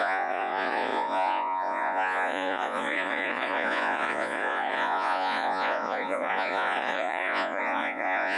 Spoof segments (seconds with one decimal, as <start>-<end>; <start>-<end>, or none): 0.0-8.4